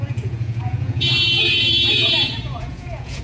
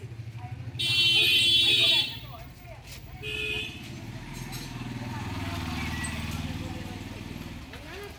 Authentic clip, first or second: second